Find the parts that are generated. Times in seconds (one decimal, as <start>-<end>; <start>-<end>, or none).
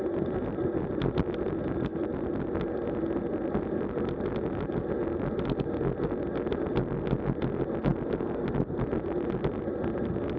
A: none